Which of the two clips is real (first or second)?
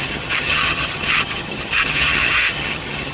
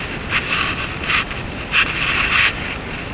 second